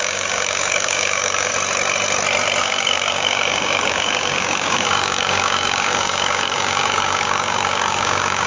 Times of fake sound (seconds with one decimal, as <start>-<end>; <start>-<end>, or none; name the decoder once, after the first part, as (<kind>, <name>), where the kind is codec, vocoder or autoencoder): 0.0-1.5 (codec, DAC); 2.6-8.5